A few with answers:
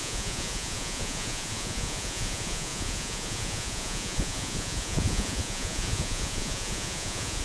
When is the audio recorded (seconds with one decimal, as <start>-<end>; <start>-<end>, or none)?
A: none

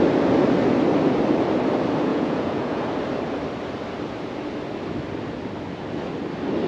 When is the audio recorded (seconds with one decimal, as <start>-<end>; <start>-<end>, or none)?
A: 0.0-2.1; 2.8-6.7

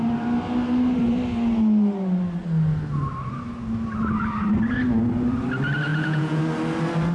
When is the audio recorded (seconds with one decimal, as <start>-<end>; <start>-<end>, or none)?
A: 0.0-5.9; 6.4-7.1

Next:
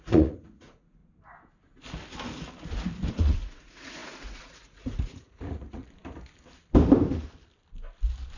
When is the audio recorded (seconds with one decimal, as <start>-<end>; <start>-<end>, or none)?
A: 1.0-3.1; 5.8-8.4